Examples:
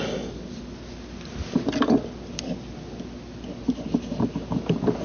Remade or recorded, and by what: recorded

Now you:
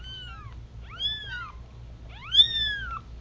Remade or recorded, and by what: recorded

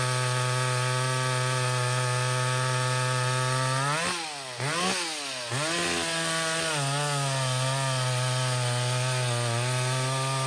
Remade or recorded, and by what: recorded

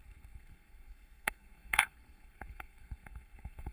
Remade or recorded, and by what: remade, codec, SNAC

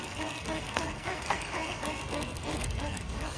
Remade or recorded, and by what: remade, codec, SNAC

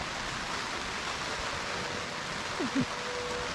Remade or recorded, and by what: recorded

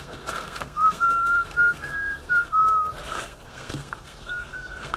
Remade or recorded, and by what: remade, codec, SNAC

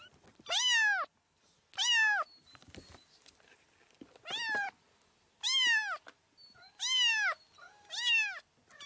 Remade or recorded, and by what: recorded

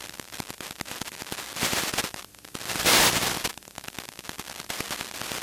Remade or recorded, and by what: recorded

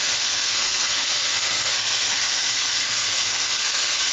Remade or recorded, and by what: remade, codec, SNAC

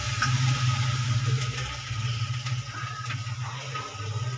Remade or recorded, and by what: recorded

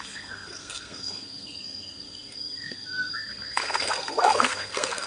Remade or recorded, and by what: remade, codec, SNAC